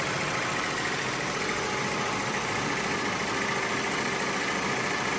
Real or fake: real